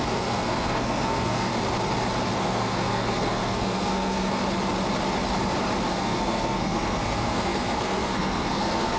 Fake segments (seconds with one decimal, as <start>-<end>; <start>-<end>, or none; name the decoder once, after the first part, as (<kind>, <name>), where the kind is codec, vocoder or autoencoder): 0.0-1.5 (codec, SNAC); 2.4-4.4; 5.9-9.0